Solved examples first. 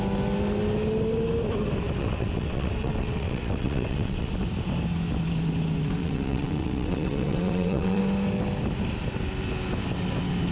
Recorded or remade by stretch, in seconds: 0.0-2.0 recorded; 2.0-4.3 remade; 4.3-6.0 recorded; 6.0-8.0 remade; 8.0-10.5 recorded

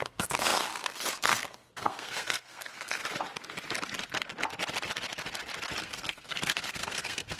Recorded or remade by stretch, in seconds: 0.0-3.0 remade; 3.0-5.8 recorded; 5.8-7.4 remade